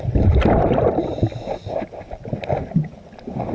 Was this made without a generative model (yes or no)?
yes